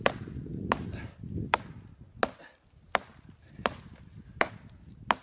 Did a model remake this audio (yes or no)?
no